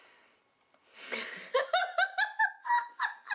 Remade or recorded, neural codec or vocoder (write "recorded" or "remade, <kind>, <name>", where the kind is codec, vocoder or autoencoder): recorded